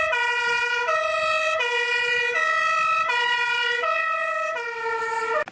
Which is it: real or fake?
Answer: real